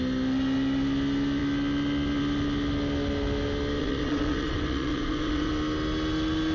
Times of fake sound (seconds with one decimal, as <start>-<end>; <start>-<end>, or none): 3.8-5.5